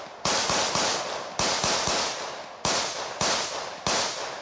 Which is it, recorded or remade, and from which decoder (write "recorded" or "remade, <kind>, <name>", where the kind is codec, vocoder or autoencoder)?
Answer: recorded